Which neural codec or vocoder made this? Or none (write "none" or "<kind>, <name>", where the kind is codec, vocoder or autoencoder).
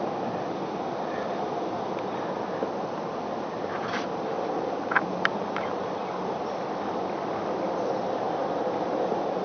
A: none